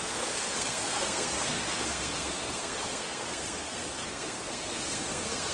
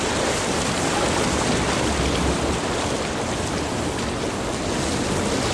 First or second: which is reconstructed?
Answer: first